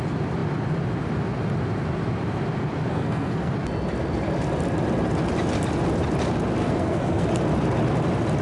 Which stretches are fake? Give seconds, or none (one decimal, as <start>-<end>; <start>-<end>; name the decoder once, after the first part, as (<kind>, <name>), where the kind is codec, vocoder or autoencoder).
2.9-3.5 (codec, SNAC); 6.6-7.3

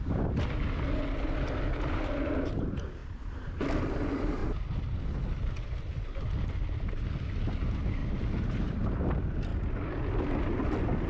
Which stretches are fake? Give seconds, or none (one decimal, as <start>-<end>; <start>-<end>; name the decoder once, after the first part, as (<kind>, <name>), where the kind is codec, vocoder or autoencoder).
3.0-3.8 (vocoder, BigVGAN v2); 4.4-5.0; 9.5-10.6

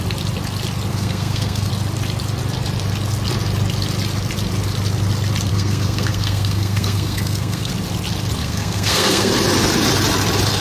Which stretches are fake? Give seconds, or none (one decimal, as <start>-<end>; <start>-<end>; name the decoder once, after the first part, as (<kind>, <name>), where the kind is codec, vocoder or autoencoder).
0.9-1.7 (codec, SNAC); 5.5-7.7; 8.4-9.3